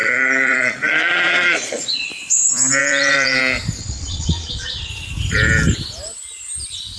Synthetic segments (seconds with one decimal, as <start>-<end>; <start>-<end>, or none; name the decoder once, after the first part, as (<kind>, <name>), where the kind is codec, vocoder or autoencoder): 0.0-2.1 (vocoder, Vocos); 2.8-3.4; 3.8-4.9